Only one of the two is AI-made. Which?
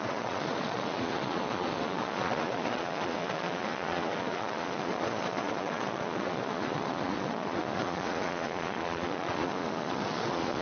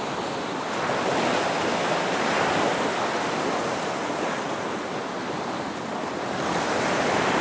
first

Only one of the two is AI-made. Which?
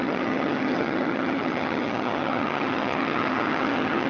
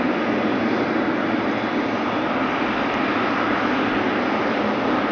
first